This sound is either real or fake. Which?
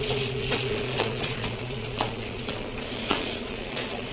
fake